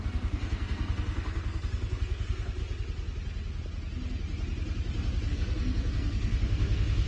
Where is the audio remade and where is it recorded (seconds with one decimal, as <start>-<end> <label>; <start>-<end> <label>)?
0.0-2.6 remade; 2.6-5.3 recorded; 5.3-7.1 remade